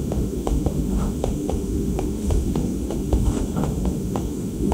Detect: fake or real fake